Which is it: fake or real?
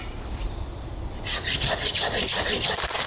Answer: real